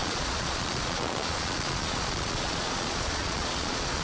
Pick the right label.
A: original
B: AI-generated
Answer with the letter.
B